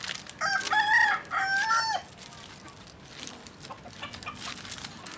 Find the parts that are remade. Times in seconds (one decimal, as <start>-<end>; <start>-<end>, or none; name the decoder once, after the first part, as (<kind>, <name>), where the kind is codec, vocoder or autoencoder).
none

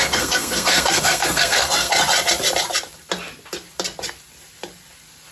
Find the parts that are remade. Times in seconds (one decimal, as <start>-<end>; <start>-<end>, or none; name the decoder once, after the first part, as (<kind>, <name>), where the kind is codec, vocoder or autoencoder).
0.0-1.9 (codec, SNAC)

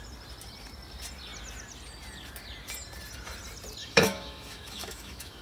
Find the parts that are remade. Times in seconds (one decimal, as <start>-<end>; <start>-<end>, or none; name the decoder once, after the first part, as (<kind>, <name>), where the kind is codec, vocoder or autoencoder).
3.8-5.4 (autoencoder, DAC-VAE)

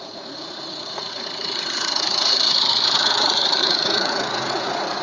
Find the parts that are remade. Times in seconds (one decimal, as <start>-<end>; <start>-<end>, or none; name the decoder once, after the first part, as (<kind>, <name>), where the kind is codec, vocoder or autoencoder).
0.0-5.0 (vocoder, Vocos)

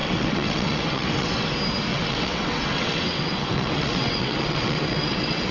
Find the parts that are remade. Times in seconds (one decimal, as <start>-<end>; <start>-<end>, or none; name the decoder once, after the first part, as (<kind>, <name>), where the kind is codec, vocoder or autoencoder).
0.0-1.5 (vocoder, WaveNeXt); 1.9-5.5

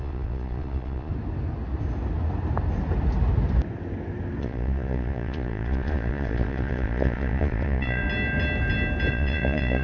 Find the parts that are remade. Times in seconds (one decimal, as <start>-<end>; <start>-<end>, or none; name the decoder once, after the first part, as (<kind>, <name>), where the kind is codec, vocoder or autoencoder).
0.0-1.1 (vocoder, Vocos); 4.4-8.0; 9.1-9.8

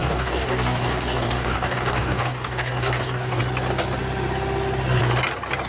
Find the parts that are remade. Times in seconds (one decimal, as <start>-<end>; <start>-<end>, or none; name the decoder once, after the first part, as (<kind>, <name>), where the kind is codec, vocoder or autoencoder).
0.0-3.4 (codec, DAC)